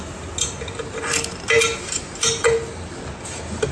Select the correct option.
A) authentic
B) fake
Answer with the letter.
A